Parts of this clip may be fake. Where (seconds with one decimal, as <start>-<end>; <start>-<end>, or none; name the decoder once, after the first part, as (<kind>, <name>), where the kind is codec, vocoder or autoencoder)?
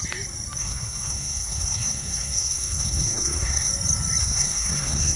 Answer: 0.6-3.7 (codec, SNAC); 4.2-5.2